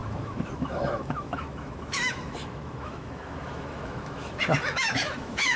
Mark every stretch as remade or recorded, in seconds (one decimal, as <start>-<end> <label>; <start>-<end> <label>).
0.0-5.6 remade